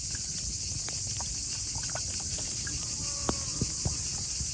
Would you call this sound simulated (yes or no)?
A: no